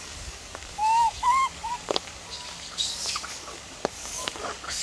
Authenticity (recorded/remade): remade